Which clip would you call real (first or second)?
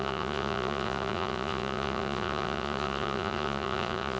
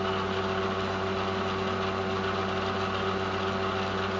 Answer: second